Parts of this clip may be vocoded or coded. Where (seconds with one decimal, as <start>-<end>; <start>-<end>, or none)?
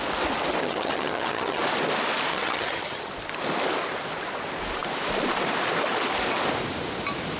0.6-1.6; 2.3-3.1